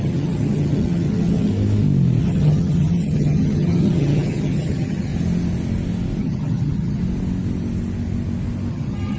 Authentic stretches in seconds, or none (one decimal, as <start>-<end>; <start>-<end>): 1.5-2.2; 5.1-6.2; 7.0-8.7